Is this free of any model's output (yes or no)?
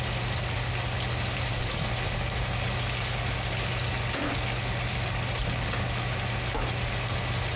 yes